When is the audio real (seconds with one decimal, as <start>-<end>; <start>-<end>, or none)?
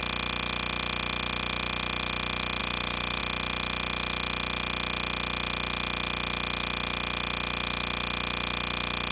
0.0-2.6; 3.2-9.1